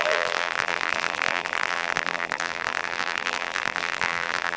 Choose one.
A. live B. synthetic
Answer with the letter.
B